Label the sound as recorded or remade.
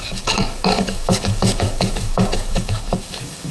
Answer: remade